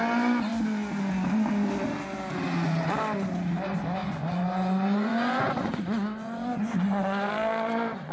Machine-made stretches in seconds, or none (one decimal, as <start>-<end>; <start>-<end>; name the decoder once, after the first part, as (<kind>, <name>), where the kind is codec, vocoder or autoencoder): 4.0-7.3 (vocoder, Vocos)